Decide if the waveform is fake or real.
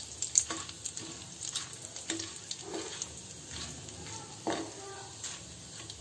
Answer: real